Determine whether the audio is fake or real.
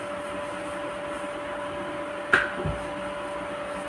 real